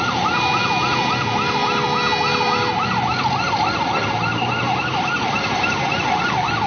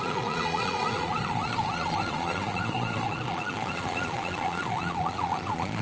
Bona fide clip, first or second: first